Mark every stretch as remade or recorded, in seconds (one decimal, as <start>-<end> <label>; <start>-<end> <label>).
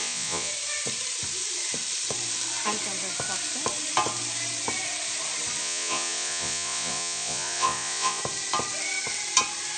0.0-0.5 remade; 0.5-5.6 recorded; 5.6-8.2 remade; 8.2-9.8 recorded